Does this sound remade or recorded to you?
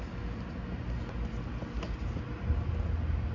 recorded